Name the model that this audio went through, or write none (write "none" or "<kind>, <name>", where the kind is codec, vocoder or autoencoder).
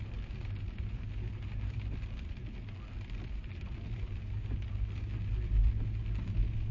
none